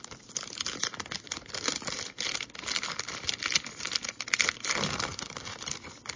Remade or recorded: recorded